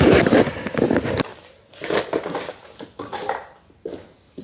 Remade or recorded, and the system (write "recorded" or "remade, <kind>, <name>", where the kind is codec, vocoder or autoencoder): recorded